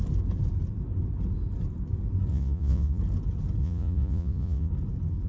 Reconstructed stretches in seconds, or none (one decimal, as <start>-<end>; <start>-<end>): 2.3-3.0; 3.6-4.7

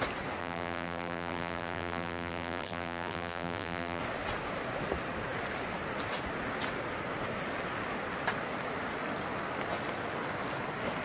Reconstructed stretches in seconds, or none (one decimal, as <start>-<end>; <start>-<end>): 0.4-4.0